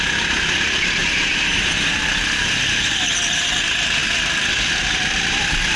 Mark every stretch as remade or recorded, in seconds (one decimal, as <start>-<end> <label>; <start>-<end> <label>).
0.0-4.0 recorded; 4.0-5.8 remade